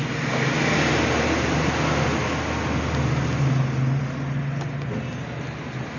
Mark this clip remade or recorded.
recorded